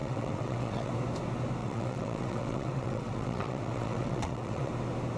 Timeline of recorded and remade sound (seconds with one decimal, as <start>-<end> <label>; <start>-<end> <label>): 0.0-0.9 remade; 0.9-1.6 recorded; 1.6-4.7 remade; 4.7-5.2 recorded